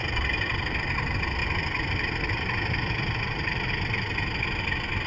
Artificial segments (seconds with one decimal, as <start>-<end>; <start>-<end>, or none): 0.0-0.9; 1.4-3.7